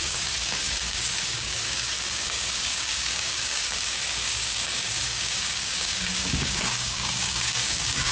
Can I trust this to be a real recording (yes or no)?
no